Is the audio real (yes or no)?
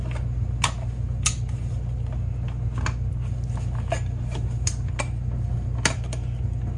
yes